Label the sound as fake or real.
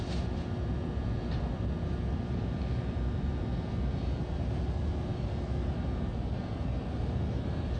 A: real